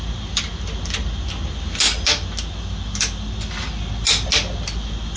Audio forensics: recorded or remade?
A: recorded